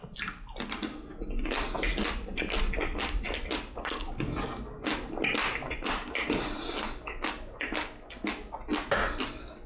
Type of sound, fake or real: real